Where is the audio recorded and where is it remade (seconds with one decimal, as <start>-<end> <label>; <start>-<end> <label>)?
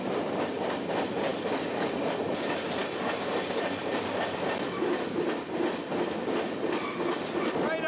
0.0-7.9 recorded